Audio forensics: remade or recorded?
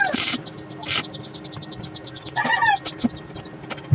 recorded